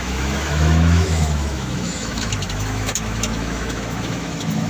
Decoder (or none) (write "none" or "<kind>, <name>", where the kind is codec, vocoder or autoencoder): autoencoder, DAC-VAE